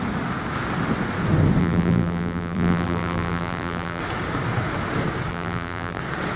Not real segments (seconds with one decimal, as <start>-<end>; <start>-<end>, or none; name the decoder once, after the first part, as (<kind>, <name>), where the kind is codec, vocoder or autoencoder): 1.6-4.0 (vocoder, BigVGAN v2); 5.3-6.0